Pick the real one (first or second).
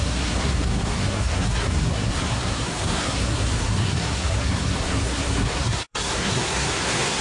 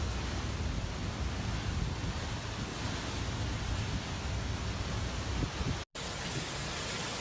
second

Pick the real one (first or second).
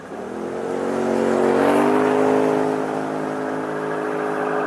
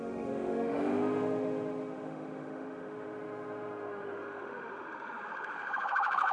first